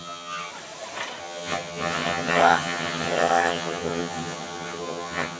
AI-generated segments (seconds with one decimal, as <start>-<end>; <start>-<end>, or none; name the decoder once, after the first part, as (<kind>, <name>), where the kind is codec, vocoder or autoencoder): 0.0-0.5 (vocoder, HiFi-GAN); 1.2-5.4